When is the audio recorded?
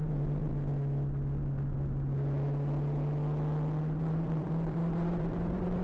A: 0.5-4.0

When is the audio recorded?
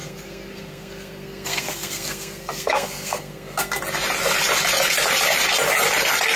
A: 3.8-6.4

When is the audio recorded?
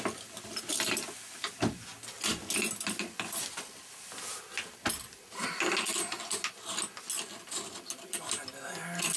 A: 0.0-9.2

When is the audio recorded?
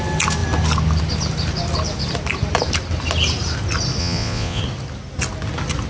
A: 0.0-4.0; 4.6-5.9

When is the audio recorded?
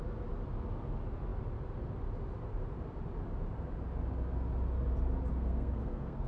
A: 0.0-5.3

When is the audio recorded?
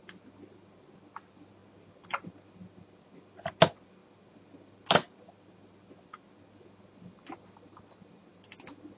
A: 0.0-9.0